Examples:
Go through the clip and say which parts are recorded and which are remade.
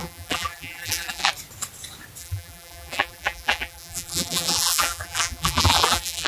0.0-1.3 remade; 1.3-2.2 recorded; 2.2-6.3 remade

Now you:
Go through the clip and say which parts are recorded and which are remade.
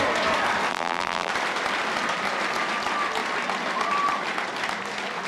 0.0-0.7 recorded; 0.7-1.3 remade; 1.3-5.3 recorded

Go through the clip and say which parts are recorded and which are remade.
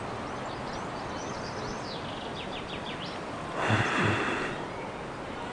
0.0-0.7 recorded; 0.7-4.0 remade; 4.0-5.5 recorded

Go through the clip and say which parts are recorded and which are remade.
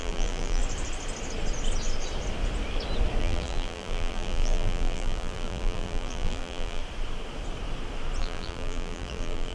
0.0-0.6 remade; 0.6-3.2 recorded; 3.2-6.8 remade; 6.8-8.2 recorded; 8.2-9.5 remade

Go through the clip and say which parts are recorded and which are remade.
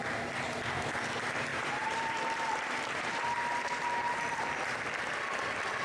0.0-1.5 recorded; 1.5-4.4 remade; 4.4-5.8 recorded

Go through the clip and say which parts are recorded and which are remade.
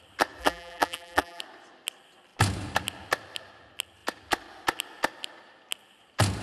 0.0-0.4 recorded; 0.4-1.4 remade; 1.4-6.4 recorded